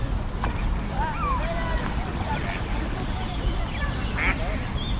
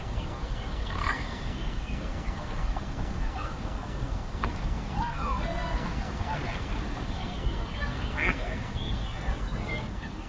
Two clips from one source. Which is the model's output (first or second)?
second